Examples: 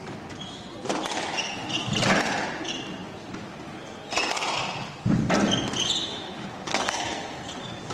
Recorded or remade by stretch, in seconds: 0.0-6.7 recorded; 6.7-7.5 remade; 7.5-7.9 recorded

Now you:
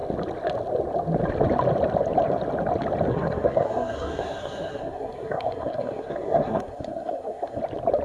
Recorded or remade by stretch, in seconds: 0.0-3.1 recorded; 3.1-7.6 remade; 7.6-8.0 recorded

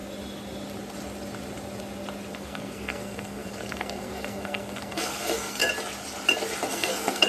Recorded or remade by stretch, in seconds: 0.0-2.3 recorded; 2.3-5.6 remade; 5.6-6.7 recorded; 6.7-7.3 remade

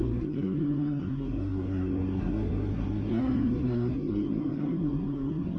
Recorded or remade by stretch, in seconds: 0.0-5.6 remade